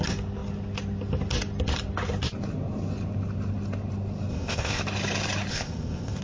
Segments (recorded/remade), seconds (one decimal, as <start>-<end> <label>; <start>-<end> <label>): 0.0-4.3 recorded; 4.3-4.8 remade; 4.8-5.5 recorded; 5.5-6.2 remade